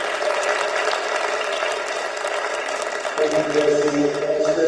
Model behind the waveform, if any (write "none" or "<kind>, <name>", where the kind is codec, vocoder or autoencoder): none